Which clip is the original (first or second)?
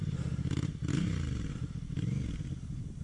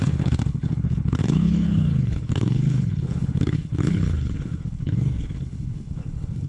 first